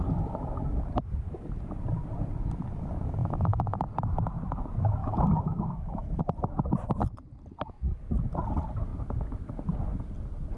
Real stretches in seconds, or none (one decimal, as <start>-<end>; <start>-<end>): 0.0-3.2; 3.8-5.0; 6.2-10.6